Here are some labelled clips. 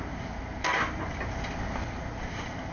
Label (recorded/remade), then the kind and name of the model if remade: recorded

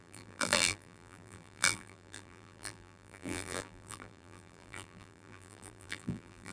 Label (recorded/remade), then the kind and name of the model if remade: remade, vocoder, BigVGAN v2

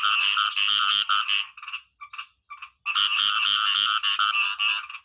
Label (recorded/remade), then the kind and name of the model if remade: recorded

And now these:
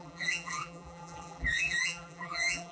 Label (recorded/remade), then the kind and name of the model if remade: remade, vocoder, BigVGAN v2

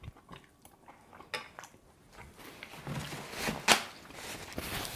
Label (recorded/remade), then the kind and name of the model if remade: recorded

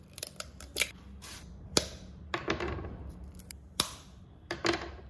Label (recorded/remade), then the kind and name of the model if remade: remade, vocoder, BigVGAN v2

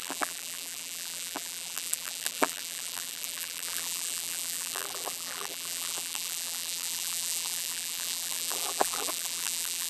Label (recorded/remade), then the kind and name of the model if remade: remade, vocoder, BigVGAN v2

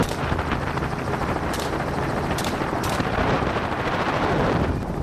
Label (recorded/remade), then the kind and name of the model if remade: remade, vocoder, BigVGAN v2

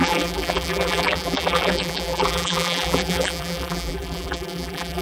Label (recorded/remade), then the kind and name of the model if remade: remade, vocoder, BigVGAN v2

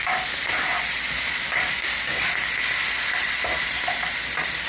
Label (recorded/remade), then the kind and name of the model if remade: recorded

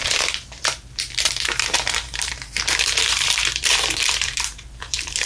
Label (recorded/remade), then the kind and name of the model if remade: remade, vocoder, BigVGAN v2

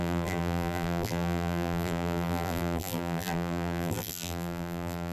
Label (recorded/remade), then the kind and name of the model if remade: remade, vocoder, BigVGAN v2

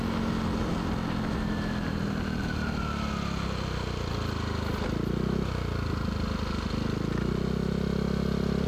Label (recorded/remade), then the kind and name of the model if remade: recorded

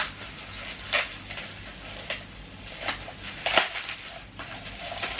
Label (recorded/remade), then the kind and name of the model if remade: recorded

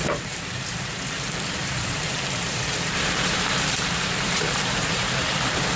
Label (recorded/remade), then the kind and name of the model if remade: remade, vocoder, BigVGAN v2